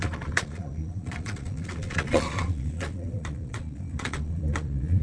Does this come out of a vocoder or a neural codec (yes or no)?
yes